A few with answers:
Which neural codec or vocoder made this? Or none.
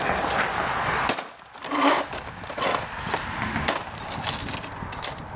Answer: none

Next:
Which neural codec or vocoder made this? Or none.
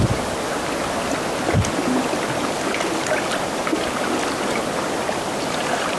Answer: none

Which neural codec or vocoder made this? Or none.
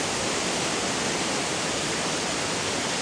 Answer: none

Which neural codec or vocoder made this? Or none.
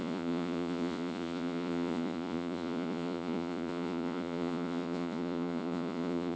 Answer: vocoder, Vocos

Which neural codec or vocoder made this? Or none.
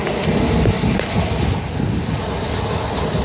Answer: none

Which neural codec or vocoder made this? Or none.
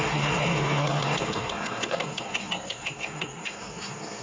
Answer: codec, SNAC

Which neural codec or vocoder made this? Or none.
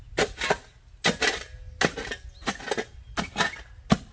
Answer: none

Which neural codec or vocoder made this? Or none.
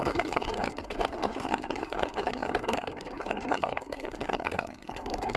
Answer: codec, SNAC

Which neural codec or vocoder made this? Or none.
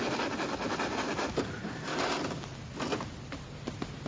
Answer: none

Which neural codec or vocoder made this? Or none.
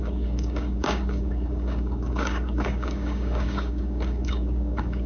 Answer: codec, DAC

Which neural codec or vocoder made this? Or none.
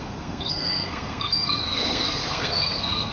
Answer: codec, SNAC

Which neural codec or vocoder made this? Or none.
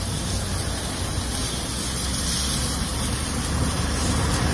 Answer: none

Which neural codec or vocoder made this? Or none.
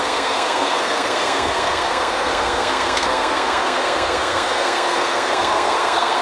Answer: codec, SNAC